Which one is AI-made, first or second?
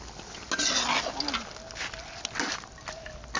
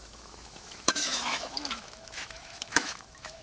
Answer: second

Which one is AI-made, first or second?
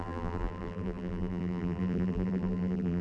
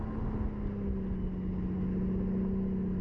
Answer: first